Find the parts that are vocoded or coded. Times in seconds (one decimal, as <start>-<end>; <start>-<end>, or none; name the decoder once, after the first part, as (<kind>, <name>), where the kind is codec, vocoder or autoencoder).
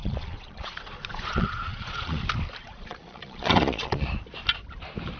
0.0-2.2 (vocoder, Vocos); 2.6-4.1